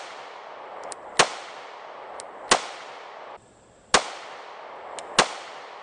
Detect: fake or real real